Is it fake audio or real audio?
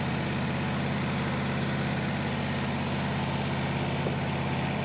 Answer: real